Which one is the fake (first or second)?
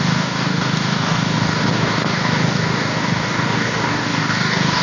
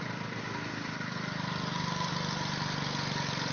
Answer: first